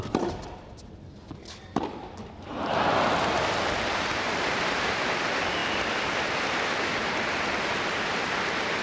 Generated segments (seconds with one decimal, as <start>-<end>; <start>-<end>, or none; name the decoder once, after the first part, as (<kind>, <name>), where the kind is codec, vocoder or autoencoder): none